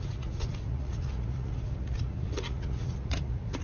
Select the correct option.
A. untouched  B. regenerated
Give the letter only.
B